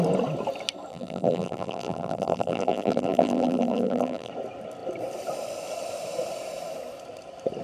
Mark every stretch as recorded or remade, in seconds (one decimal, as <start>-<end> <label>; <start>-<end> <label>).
0.0-0.9 recorded; 0.9-4.3 remade; 4.3-7.6 recorded